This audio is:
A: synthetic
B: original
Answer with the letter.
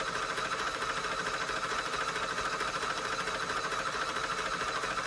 B